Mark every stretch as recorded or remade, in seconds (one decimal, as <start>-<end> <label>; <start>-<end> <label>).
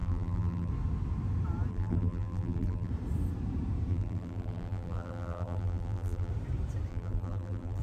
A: 0.0-0.7 remade; 0.7-1.7 recorded; 1.7-2.9 remade; 2.9-3.9 recorded; 3.9-6.3 remade; 6.3-6.9 recorded; 6.9-7.8 remade